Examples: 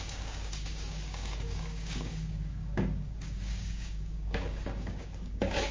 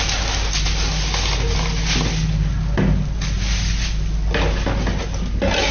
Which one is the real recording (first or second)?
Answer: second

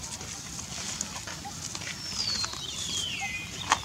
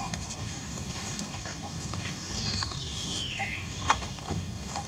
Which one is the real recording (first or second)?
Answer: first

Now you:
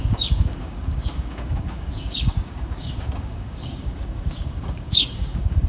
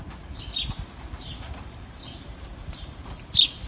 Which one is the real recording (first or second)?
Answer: second